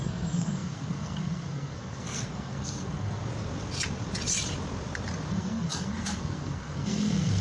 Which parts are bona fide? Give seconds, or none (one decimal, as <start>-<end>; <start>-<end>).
3.2-5.3